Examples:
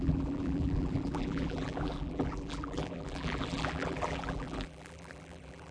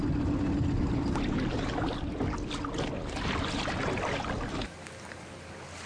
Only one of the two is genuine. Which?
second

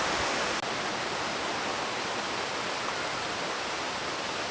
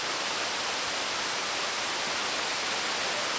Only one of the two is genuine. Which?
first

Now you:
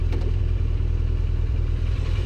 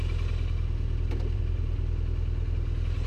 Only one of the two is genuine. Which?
second